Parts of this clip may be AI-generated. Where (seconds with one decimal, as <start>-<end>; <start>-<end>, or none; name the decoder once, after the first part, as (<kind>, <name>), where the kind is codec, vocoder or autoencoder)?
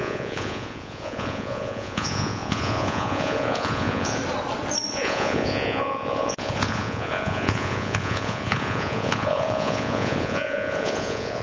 0.0-4.2 (vocoder, Vocos); 4.9-11.4